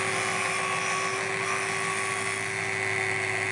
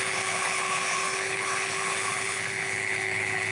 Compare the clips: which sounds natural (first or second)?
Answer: first